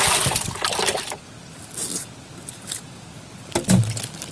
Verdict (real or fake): real